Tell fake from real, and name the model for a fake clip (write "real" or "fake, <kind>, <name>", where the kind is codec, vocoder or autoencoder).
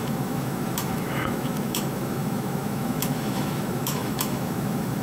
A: fake, autoencoder, DAC-VAE